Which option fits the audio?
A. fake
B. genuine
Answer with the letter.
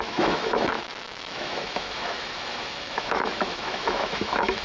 A